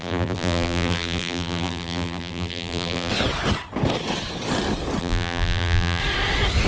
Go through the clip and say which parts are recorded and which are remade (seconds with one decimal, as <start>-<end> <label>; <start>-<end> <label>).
0.0-3.1 remade; 3.1-5.0 recorded; 5.0-6.0 remade; 6.0-6.7 recorded